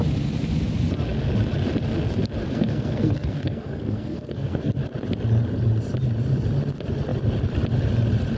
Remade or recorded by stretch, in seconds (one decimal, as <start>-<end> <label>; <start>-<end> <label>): 0.0-2.4 recorded; 2.4-4.7 remade; 4.7-8.4 recorded